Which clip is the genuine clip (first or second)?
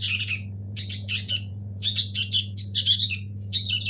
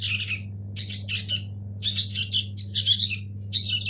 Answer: second